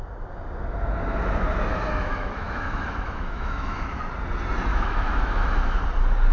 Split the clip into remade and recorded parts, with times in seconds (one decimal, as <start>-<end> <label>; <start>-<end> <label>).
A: 0.0-1.7 recorded; 1.7-4.0 remade; 4.0-4.7 recorded; 4.7-5.8 remade; 5.8-6.3 recorded